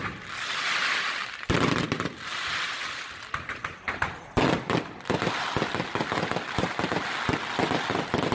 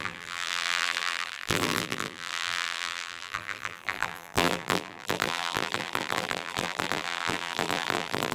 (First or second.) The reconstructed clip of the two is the second